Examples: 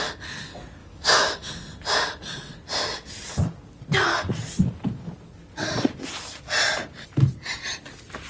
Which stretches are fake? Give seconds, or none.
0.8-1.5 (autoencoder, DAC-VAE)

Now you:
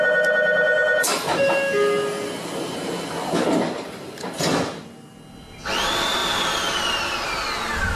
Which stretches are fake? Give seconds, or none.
none

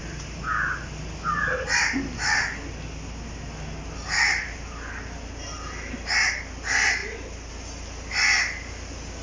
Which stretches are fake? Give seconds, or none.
none

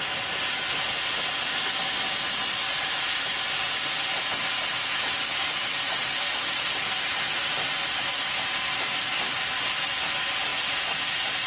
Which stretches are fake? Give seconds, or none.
none

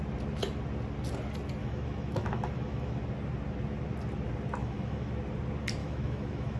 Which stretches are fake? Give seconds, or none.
1.6-3.0 (autoencoder, DAC-VAE); 4.6-5.1; 5.8-6.6